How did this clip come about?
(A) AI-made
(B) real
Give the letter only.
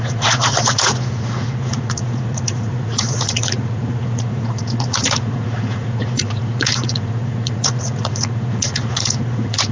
A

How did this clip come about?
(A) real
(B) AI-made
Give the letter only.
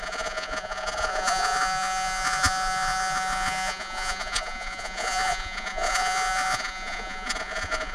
B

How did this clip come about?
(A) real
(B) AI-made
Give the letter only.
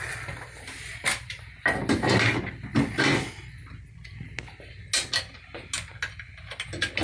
A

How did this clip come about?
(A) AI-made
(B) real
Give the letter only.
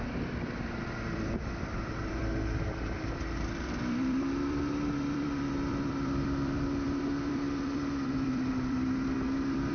A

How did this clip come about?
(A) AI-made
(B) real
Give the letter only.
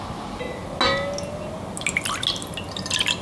B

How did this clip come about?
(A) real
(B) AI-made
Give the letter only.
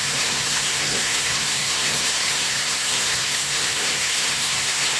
B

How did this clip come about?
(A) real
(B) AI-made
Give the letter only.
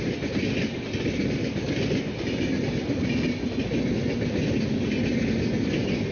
A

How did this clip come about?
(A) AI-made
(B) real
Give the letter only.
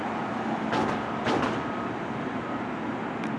B